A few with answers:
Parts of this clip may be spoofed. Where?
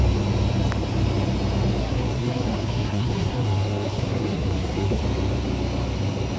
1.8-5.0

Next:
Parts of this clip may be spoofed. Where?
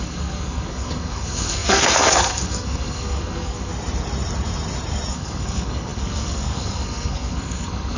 0.0-3.7; 5.1-8.0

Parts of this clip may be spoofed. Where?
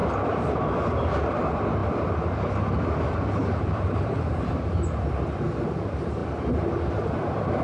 3.4-4.6